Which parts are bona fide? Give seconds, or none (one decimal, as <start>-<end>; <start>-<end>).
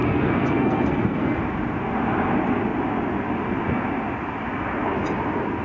1.4-5.6